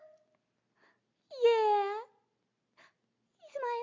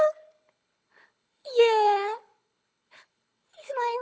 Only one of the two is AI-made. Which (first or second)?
second